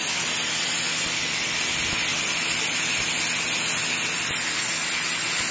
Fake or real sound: real